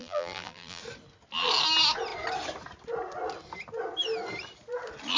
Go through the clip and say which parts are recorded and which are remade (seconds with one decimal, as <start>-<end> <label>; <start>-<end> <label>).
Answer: 0.0-0.8 remade; 0.8-5.2 recorded